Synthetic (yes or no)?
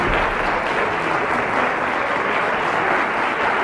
no